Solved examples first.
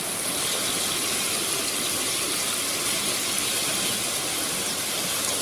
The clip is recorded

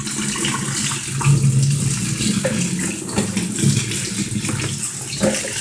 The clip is recorded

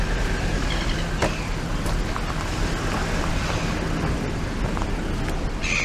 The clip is recorded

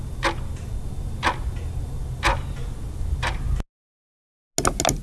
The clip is recorded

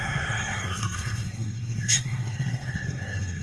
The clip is remade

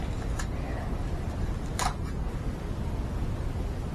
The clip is recorded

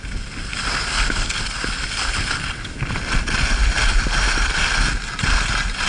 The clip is recorded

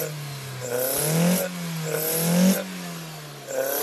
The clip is recorded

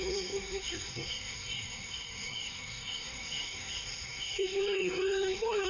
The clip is remade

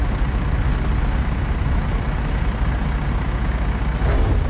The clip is recorded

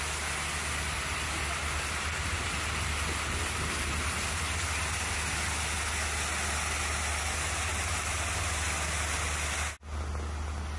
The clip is recorded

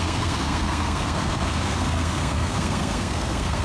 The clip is remade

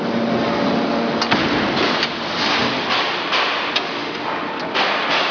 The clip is recorded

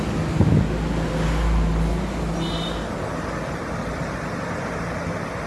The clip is recorded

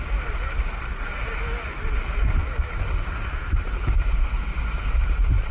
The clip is recorded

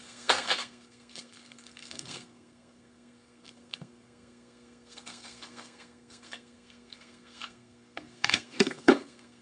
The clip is remade